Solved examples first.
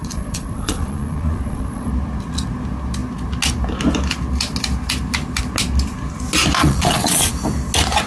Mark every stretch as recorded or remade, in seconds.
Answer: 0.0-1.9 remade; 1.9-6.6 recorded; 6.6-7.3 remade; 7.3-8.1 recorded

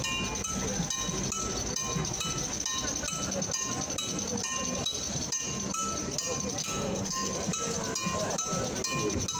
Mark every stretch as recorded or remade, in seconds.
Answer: 0.0-6.6 recorded; 6.6-7.3 remade; 7.3-9.4 recorded

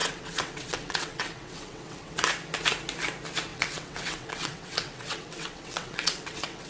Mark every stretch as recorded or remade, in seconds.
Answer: 0.0-2.1 remade; 2.1-3.5 recorded; 3.5-6.7 remade

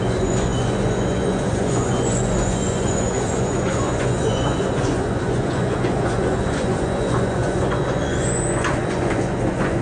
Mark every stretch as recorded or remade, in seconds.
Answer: 0.0-9.8 remade

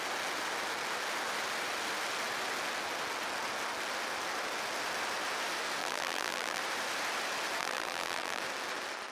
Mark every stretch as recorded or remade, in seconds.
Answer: 0.0-5.8 recorded; 5.8-6.6 remade; 6.6-7.6 recorded; 7.6-8.4 remade; 8.4-9.1 recorded

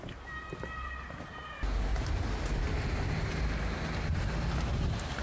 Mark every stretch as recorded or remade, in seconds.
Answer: 0.0-1.9 recorded; 1.9-2.7 remade; 2.7-5.2 recorded

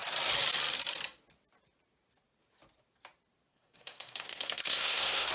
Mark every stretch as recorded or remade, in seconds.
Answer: 0.0-3.5 recorded; 3.5-5.3 remade